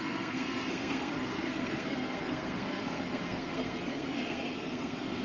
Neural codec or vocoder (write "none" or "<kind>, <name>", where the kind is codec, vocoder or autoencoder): codec, SNAC